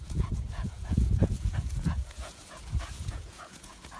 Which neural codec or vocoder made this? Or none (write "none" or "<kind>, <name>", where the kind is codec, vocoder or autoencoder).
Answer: vocoder, Vocos